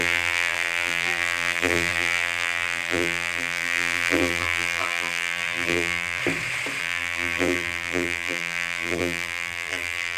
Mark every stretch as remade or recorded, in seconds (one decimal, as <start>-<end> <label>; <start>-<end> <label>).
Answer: 0.0-6.2 remade; 6.2-6.8 recorded; 6.8-10.2 remade